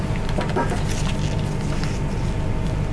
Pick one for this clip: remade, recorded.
recorded